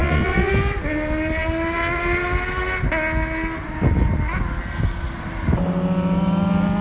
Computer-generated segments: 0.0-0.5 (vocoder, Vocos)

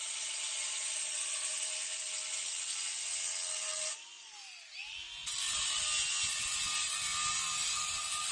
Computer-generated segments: 0.0-1.5 (vocoder, Vocos)